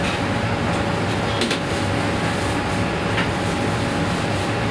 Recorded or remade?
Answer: recorded